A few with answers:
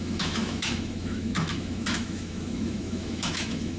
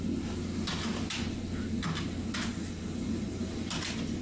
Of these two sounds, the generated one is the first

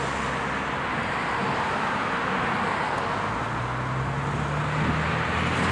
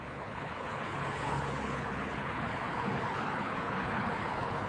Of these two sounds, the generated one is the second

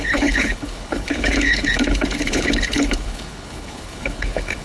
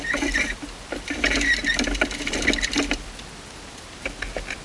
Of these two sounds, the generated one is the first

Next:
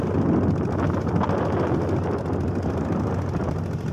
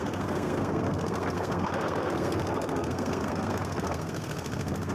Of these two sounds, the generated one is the second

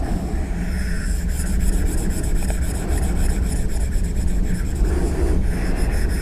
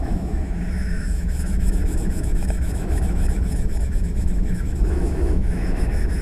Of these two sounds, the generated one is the second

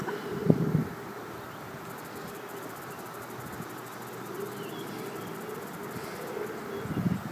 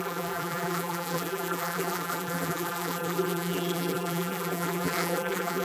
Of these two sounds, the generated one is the second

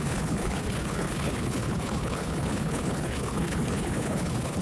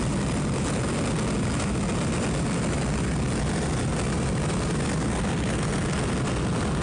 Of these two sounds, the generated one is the first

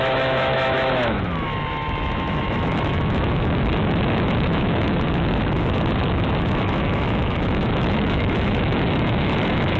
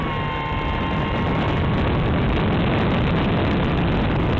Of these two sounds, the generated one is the first